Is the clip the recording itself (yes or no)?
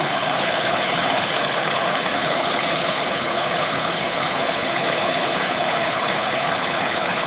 no